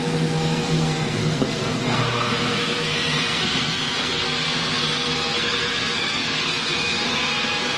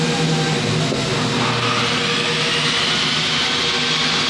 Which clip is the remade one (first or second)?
first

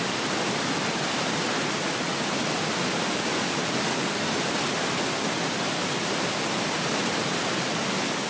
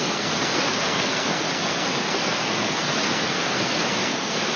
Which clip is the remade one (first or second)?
second